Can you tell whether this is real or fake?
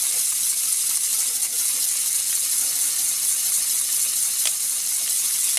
real